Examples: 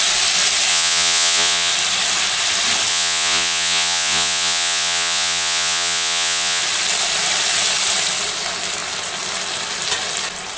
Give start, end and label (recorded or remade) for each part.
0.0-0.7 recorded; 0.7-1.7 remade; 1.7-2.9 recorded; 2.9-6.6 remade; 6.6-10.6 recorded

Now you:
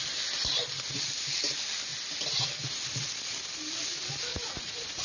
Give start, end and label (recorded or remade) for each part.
0.0-4.3 recorded; 4.3-5.0 remade

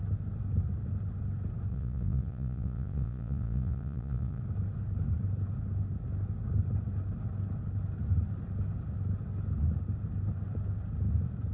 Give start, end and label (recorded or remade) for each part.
0.0-1.7 recorded; 1.7-4.4 remade; 4.4-11.5 recorded

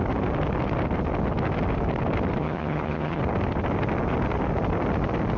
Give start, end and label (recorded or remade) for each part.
0.0-2.4 recorded; 2.4-3.2 remade; 3.2-5.4 recorded

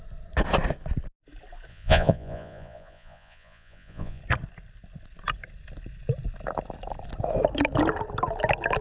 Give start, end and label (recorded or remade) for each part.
0.0-1.7 recorded; 1.7-4.2 remade; 4.2-8.8 recorded

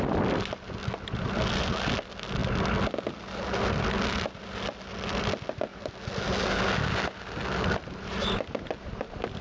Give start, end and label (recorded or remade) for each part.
0.0-9.4 recorded

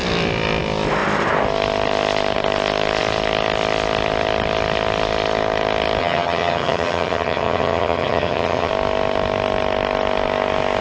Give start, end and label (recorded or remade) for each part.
0.0-6.0 recorded; 6.0-8.7 remade; 8.7-10.8 recorded

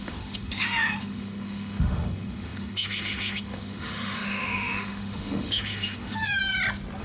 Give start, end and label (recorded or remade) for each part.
0.0-6.4 remade; 6.4-7.0 recorded